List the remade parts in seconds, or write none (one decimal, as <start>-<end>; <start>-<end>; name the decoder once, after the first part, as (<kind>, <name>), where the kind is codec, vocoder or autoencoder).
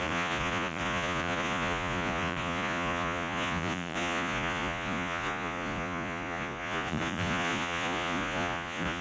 0.0-9.0 (vocoder, Vocos)